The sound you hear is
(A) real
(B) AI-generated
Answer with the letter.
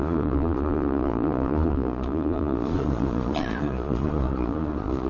B